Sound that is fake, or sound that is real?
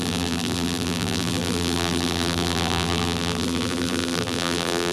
fake